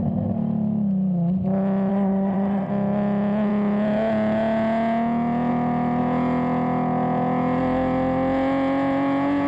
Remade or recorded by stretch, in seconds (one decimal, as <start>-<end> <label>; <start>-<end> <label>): 0.0-1.9 recorded; 1.9-2.7 remade; 2.7-9.5 recorded